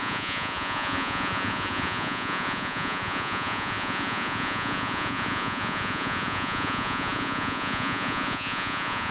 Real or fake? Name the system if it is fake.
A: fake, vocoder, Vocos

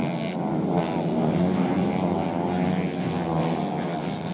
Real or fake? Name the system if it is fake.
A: real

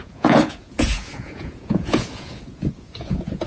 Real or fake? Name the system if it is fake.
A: fake, vocoder, Vocos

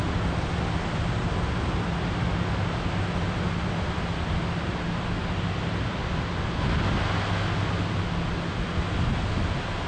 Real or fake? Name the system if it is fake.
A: real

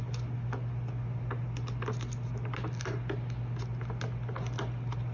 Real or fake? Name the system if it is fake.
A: real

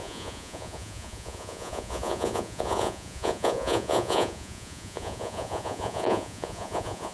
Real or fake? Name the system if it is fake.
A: fake, vocoder, Vocos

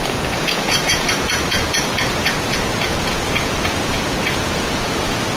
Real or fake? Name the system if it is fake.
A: fake, vocoder, Vocos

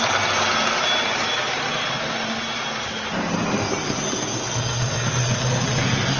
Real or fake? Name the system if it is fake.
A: real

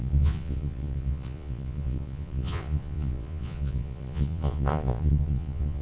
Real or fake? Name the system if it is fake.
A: fake, vocoder, Vocos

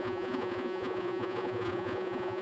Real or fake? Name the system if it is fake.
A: fake, vocoder, Vocos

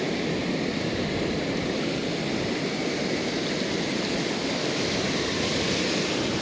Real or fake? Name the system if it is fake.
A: real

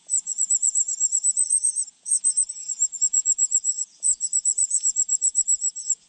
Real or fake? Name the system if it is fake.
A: fake, vocoder, Vocos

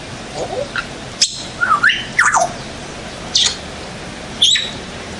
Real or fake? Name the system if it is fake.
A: real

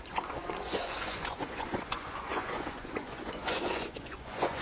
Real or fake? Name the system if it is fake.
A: fake, vocoder, Vocos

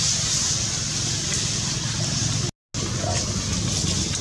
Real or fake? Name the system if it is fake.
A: real